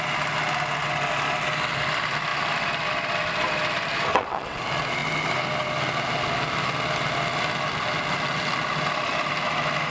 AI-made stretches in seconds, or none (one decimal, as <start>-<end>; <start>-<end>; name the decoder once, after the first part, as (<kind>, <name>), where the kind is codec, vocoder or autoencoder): 4.1-4.6 (vocoder, WaveNeXt)